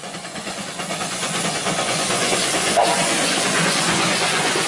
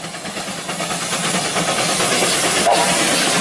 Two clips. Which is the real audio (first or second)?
second